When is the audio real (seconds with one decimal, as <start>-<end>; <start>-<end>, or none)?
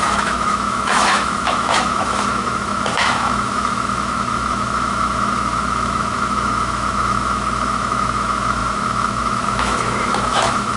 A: none